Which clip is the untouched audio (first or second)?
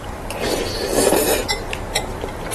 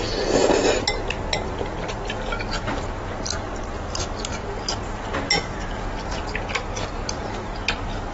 second